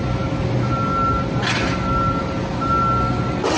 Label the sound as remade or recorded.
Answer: recorded